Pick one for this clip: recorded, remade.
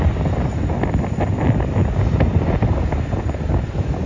recorded